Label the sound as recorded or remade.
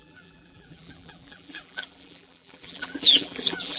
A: remade